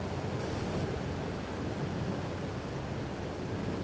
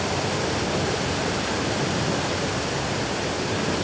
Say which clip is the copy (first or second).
second